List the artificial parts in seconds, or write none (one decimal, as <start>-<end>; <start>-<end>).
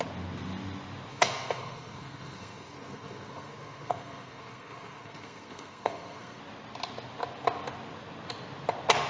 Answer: 1.1-6.4